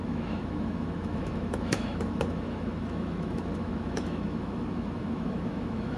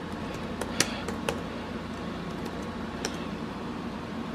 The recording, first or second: second